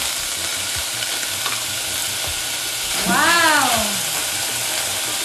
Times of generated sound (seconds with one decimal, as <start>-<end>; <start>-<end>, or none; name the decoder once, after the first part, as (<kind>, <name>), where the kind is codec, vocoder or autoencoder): 0.5-1.1 (vocoder, BigVGAN v2)